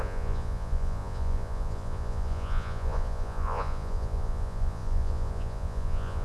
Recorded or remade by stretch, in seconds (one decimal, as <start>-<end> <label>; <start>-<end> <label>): 0.0-6.2 remade